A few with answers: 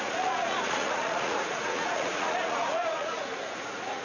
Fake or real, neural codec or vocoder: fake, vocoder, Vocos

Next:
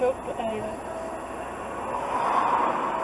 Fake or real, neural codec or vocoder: real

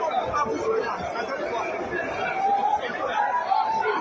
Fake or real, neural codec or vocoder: real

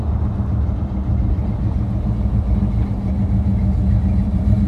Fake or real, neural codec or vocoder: real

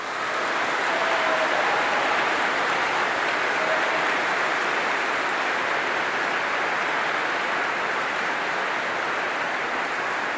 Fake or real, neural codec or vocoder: real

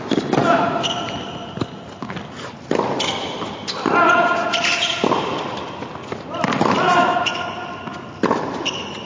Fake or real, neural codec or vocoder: real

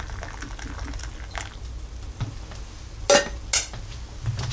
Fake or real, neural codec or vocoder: real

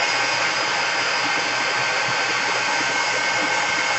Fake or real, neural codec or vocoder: real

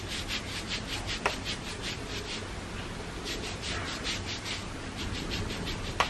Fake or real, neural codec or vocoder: real